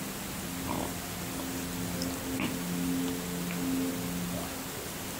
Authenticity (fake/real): real